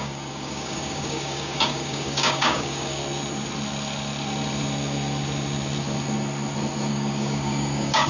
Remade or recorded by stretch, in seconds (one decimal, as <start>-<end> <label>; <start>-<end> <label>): 0.0-3.0 remade; 3.0-6.9 recorded; 6.9-8.1 remade